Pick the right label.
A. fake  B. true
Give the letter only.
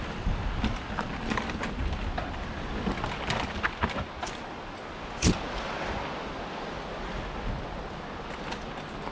B